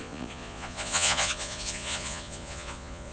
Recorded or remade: remade